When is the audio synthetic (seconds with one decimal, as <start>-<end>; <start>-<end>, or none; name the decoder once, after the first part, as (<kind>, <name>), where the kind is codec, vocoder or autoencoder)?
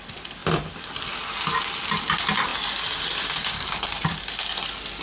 none